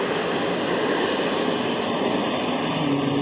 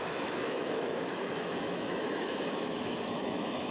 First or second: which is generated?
second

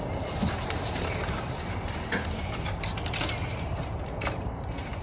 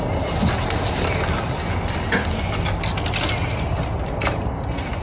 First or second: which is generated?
first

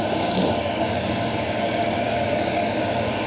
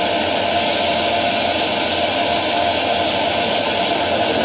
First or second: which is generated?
first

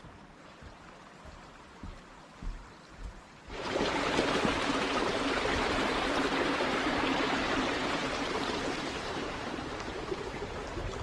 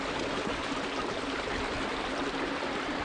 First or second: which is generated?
first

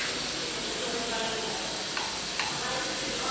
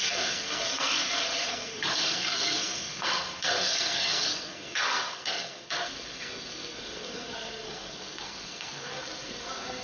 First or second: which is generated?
second